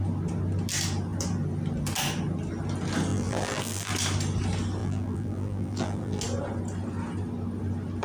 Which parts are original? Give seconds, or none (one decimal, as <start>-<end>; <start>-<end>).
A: 0.0-3.1; 3.9-4.8; 6.2-8.0